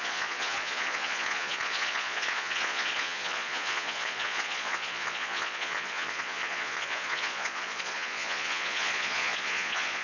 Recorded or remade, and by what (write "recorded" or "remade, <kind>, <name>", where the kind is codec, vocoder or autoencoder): remade, vocoder, Vocos